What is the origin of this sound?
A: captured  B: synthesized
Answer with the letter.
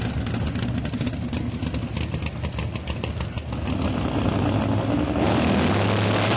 A